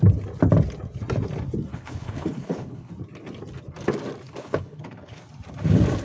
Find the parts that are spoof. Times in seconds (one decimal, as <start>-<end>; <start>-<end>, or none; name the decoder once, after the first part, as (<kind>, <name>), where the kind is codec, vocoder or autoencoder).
1.7-2.9 (codec, HILCodec); 4.4-5.2